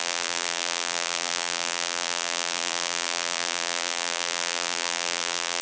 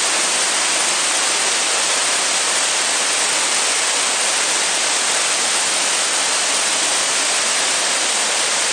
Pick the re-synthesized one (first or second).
first